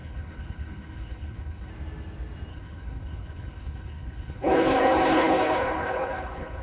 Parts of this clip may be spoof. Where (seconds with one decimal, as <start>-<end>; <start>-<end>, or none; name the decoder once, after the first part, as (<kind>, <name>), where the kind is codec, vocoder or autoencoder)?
0.0-1.7 (codec, HILCodec); 2.5-6.6